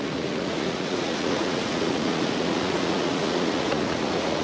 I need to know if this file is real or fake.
fake